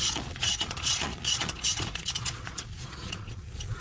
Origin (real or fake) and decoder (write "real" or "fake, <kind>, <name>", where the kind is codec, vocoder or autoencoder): fake, vocoder, Vocos